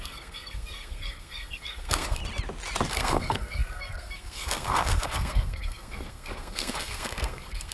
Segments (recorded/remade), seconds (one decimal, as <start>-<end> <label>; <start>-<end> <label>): 0.0-2.2 remade; 2.2-2.9 recorded; 2.9-7.7 remade